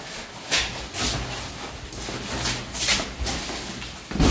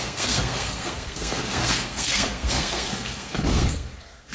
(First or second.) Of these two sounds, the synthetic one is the second